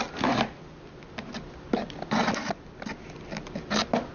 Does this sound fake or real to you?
real